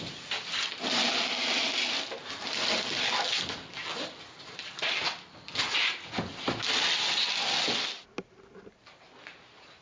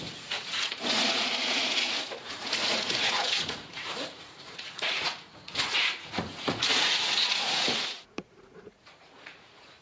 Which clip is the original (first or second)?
first